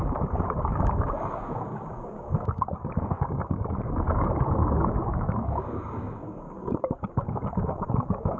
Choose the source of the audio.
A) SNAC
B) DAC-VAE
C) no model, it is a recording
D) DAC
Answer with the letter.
D